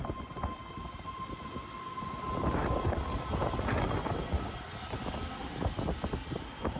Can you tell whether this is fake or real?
real